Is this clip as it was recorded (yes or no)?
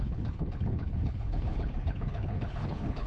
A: no